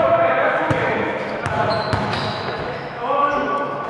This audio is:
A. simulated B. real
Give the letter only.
A